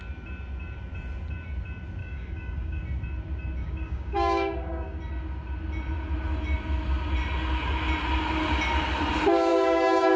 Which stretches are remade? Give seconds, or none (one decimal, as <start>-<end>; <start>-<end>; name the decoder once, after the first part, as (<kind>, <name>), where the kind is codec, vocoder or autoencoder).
2.0-2.8 (codec, DAC); 3.6-5.0; 9.5-10.2

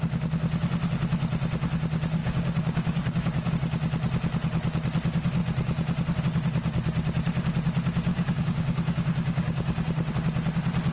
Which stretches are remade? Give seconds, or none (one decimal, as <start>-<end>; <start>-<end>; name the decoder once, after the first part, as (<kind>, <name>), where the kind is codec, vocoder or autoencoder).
2.2-3.5 (codec, DAC); 8.1-10.1

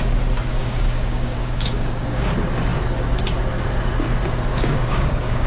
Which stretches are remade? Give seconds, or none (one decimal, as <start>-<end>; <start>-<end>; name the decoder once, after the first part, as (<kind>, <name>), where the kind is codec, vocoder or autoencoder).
0.6-2.3 (codec, DAC); 4.5-5.5

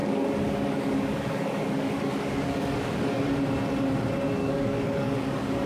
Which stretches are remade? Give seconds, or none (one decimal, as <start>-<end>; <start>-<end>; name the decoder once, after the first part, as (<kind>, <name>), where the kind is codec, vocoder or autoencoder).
0.0-3.2 (codec, DAC); 4.4-5.7

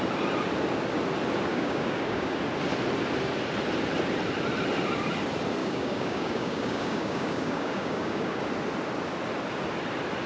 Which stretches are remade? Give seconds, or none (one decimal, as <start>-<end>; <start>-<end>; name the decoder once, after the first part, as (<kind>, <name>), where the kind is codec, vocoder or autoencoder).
1.5-2.4 (codec, DAC); 5.6-8.4